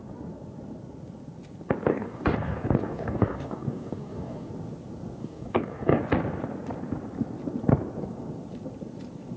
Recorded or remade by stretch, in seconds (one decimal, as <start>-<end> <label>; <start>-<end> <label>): 0.0-1.9 recorded; 1.9-4.5 remade; 4.5-5.2 recorded; 5.2-6.0 remade; 6.0-9.4 recorded